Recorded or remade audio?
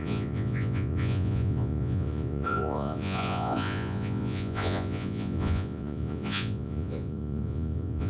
remade